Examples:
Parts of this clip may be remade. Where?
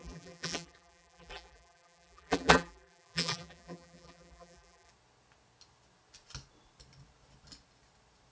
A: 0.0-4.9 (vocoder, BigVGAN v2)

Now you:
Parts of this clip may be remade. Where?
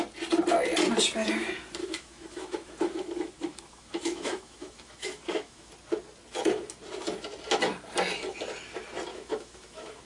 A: 1.8-5.7 (autoencoder, DAC-VAE); 9.1-10.0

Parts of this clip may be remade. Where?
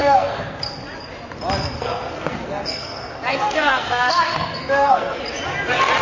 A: 0.0-0.6 (codec, SNAC); 1.6-5.2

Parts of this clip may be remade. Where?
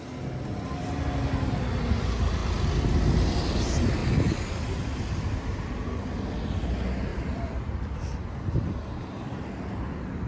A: 2.4-3.4 (vocoder, BigVGAN v2); 4.0-6.0; 7.1-9.7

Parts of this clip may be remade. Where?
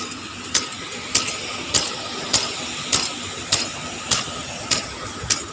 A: none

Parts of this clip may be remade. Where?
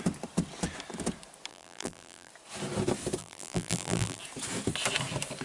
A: 1.5-2.3 (vocoder, BigVGAN v2); 3.2-4.2